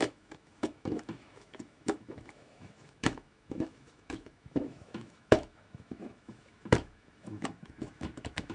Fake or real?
fake